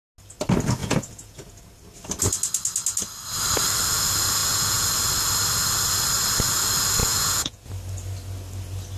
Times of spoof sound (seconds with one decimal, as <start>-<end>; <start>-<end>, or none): 0.8-1.6; 4.4-4.9; 7.0-7.7